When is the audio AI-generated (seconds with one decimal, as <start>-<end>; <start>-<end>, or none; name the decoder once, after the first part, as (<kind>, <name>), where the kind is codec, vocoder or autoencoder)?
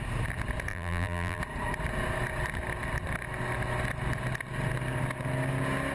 0.7-1.4 (vocoder, BigVGAN v2)